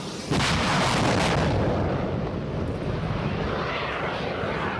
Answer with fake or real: real